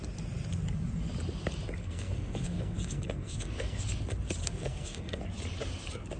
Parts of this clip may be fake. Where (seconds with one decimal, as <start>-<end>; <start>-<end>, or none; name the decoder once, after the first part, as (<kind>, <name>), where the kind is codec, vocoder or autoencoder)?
1.8-3.8 (codec, SNAC); 4.4-5.2